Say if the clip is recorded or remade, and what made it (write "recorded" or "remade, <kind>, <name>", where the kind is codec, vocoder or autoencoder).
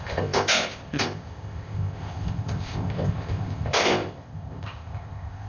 remade, codec, ZipCodec